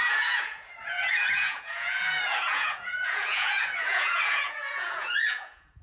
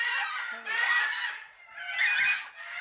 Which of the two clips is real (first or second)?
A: second